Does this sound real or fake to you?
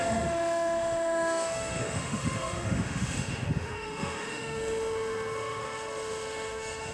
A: fake